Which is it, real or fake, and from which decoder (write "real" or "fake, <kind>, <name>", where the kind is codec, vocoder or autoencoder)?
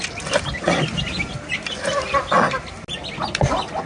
real